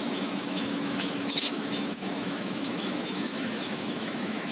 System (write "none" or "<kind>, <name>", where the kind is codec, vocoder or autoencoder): autoencoder, DAC-VAE